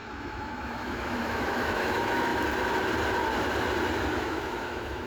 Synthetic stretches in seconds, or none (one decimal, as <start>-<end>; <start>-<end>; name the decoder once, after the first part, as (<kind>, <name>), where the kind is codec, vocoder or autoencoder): 0.0-2.3 (autoencoder, DAC-VAE); 4.2-5.1